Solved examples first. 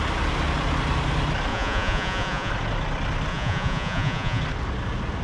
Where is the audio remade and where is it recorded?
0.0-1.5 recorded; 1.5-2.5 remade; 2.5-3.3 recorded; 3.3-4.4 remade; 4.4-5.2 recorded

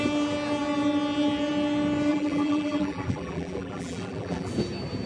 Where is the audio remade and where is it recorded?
0.0-2.1 recorded; 2.1-4.5 remade; 4.5-5.1 recorded

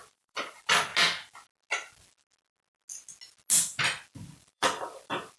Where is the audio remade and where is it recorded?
0.0-0.9 remade; 0.9-4.1 recorded; 4.1-5.4 remade

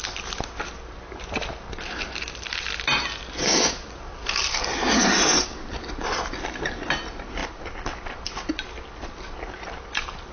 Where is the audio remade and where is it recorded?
0.0-3.4 recorded; 3.4-4.1 remade; 4.1-5.5 recorded; 5.5-10.3 remade

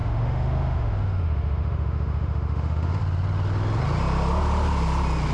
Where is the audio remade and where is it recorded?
0.0-3.0 remade; 3.0-5.3 recorded